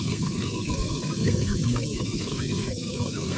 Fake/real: fake